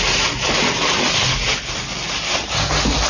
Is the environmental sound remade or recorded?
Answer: recorded